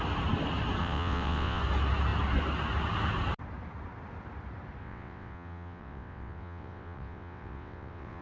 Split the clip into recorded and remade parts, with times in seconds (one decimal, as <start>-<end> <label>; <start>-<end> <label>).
0.0-0.8 recorded; 0.8-1.6 remade; 1.6-4.8 recorded; 4.8-8.2 remade